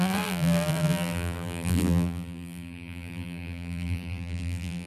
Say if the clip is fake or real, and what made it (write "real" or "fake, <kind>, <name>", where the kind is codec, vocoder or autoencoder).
fake, vocoder, BigVGAN v2